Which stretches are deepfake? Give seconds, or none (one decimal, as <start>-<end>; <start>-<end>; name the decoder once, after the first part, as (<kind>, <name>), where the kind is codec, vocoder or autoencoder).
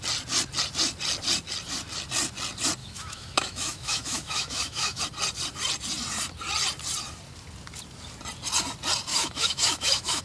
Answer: 2.8-5.0 (autoencoder, DAC-VAE); 9.1-10.2